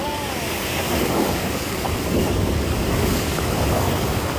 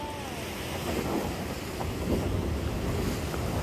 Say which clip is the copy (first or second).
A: first